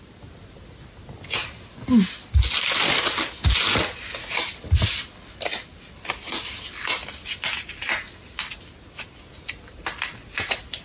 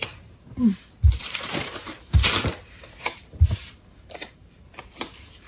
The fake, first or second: second